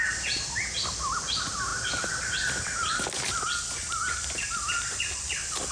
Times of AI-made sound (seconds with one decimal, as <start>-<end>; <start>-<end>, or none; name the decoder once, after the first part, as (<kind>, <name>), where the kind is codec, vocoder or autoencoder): none